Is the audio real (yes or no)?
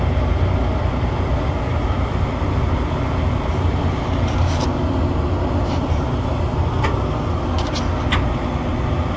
yes